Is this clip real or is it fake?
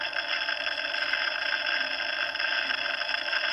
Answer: real